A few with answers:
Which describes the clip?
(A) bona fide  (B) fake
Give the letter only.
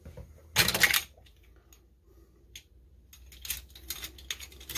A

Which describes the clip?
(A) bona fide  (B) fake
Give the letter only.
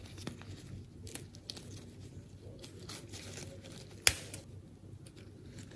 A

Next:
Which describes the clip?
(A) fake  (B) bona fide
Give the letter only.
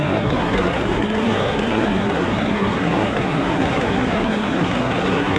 A